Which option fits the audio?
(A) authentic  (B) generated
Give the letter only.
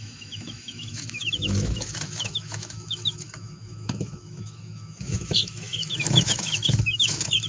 B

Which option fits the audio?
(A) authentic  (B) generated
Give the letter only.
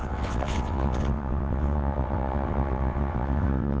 B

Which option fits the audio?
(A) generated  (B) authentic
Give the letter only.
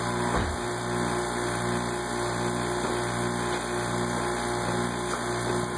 B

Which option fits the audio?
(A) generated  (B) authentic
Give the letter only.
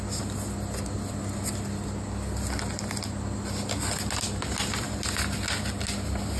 B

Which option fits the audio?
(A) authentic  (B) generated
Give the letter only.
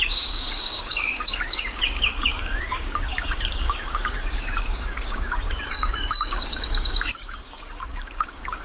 B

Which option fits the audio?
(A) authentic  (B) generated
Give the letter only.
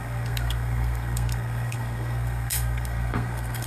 B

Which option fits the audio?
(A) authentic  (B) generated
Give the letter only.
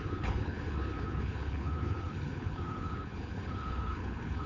B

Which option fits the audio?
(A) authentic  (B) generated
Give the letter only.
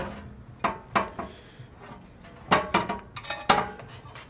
A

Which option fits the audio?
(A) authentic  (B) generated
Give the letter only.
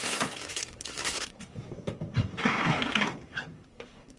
B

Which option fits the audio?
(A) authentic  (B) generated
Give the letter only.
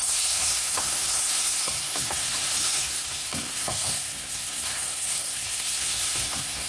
B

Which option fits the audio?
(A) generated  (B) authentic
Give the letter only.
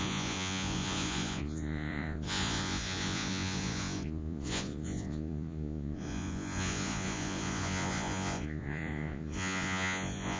A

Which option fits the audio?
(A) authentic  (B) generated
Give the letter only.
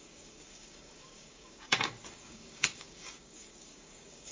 B